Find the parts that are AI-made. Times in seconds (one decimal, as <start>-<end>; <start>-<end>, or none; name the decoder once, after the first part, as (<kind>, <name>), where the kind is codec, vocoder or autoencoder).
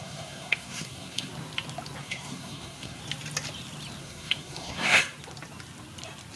0.0-1.3 (codec, SNAC); 2.0-3.0; 4.0-5.0